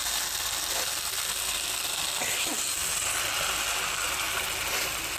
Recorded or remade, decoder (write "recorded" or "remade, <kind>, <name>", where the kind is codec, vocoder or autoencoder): recorded